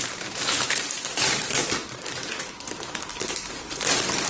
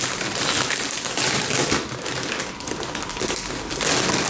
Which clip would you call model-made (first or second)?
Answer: first